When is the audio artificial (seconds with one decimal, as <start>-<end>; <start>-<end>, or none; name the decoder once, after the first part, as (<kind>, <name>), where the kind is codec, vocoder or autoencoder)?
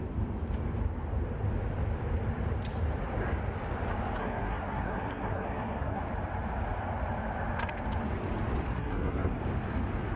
4.2-6.0 (codec, SNAC); 8.7-9.4